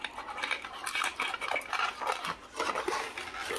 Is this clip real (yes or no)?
yes